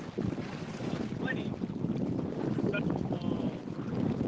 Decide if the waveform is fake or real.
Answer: real